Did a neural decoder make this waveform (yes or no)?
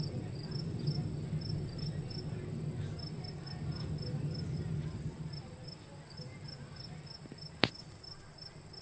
no